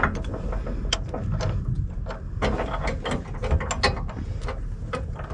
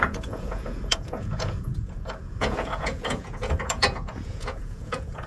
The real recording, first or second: first